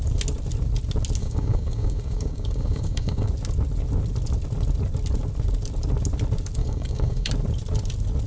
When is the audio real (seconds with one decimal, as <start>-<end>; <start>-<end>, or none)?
0.0-1.2; 3.3-6.6; 7.3-8.3